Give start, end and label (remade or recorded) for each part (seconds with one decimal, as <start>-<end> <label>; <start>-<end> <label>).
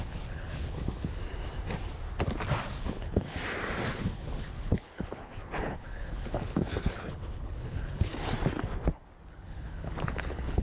0.0-1.2 remade; 1.2-2.7 recorded; 2.7-3.3 remade; 3.3-3.9 recorded; 3.9-8.1 remade; 8.1-9.3 recorded; 9.3-10.6 remade